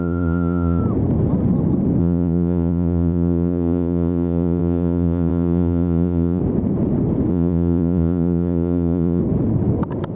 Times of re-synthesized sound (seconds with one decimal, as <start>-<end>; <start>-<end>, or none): 0.0-0.8; 2.0-6.4; 7.3-9.2